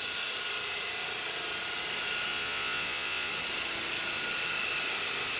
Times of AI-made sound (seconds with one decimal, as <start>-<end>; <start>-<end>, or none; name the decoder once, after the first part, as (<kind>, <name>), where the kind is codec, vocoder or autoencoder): 2.3-3.3 (vocoder, Vocos)